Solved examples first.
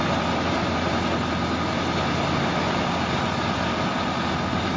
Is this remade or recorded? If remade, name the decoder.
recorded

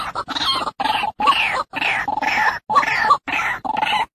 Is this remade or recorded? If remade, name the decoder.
recorded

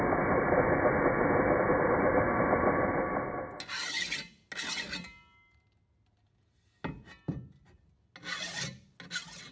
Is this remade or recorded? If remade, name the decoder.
recorded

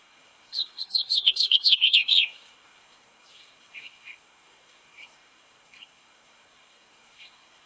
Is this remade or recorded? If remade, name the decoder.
remade, codec, SNAC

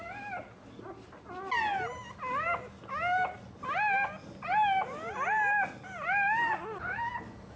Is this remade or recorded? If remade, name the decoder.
recorded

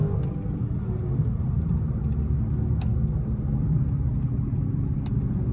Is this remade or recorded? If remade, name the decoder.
recorded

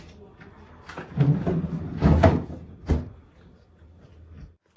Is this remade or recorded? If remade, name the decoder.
recorded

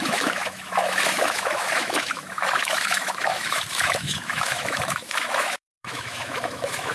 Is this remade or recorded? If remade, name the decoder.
remade, autoencoder, DAC-VAE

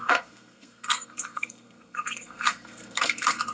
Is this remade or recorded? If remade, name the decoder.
remade, codec, SNAC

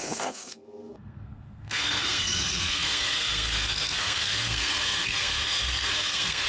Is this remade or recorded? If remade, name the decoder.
remade, codec, SNAC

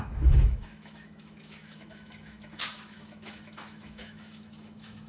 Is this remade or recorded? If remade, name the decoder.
remade, autoencoder, DAC-VAE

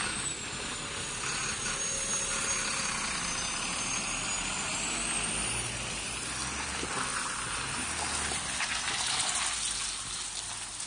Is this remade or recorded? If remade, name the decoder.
recorded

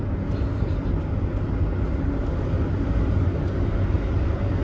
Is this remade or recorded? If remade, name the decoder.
recorded